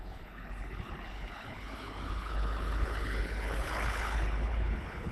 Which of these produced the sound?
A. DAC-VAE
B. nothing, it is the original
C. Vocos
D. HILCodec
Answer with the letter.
D